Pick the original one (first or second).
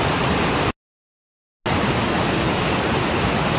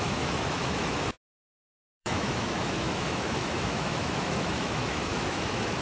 first